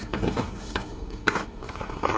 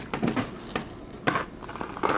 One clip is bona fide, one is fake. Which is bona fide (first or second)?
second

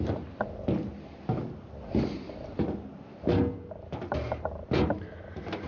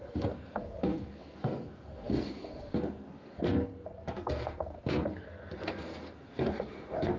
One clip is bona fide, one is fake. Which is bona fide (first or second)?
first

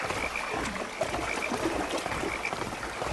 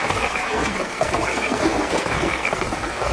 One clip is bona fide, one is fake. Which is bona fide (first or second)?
first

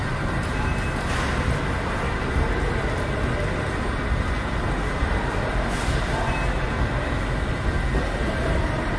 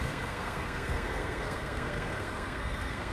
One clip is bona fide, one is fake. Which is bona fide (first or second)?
first